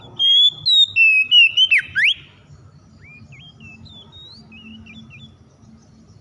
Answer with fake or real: real